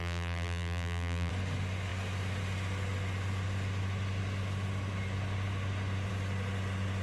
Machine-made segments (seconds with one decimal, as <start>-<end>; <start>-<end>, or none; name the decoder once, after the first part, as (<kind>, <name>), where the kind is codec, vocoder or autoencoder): 0.0-1.3 (vocoder, BigVGAN v2)